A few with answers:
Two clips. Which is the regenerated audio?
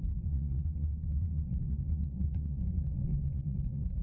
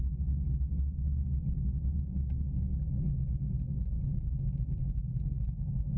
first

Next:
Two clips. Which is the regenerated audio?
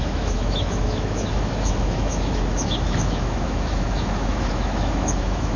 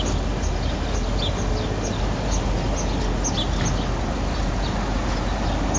first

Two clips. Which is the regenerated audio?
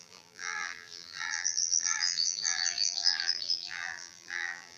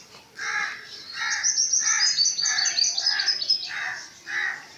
first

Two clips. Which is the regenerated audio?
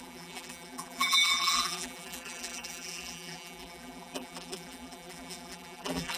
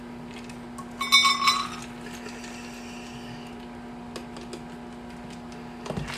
first